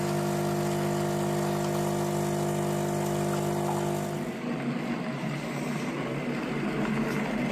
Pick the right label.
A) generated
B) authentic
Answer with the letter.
B